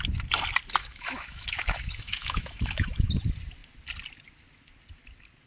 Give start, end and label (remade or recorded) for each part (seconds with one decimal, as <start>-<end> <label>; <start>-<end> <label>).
0.0-0.8 recorded; 0.8-3.1 remade; 3.1-5.5 recorded